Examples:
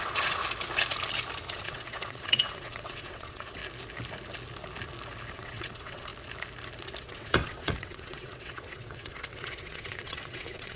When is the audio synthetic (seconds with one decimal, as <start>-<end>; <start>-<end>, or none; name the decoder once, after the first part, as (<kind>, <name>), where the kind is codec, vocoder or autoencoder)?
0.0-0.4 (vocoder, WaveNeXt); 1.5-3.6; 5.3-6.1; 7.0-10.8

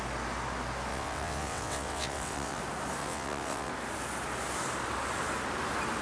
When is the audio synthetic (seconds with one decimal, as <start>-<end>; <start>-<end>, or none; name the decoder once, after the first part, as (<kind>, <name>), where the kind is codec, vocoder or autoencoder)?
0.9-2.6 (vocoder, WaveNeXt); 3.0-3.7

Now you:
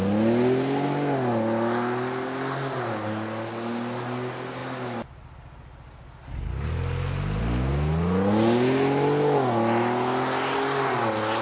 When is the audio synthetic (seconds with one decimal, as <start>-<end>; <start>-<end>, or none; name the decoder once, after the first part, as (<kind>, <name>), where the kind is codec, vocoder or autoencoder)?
none

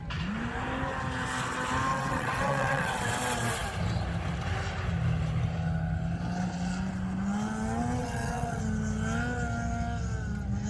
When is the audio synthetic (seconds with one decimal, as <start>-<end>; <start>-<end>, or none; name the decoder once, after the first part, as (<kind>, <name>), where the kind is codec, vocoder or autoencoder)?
1.9-3.1 (vocoder, WaveNeXt); 8.0-8.6

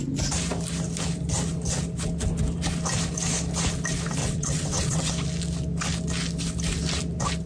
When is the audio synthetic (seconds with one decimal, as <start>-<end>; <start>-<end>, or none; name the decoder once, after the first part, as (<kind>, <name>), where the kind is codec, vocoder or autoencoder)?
4.2-5.1 (vocoder, WaveNeXt)

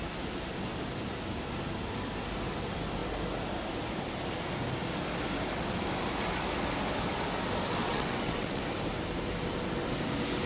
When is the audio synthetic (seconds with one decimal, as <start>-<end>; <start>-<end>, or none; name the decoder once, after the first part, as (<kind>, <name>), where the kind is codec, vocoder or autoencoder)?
7.8-8.6 (vocoder, WaveNeXt)

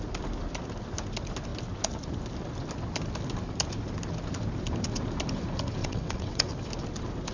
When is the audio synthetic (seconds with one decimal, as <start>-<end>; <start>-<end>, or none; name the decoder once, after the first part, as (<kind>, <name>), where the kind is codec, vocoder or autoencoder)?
5.8-6.5 (vocoder, WaveNeXt)

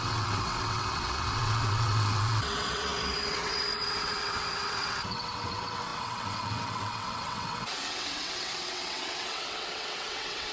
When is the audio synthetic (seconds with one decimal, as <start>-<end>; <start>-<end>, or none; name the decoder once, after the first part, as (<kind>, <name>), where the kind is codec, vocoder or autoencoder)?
0.0-10.5 (vocoder, WaveNeXt)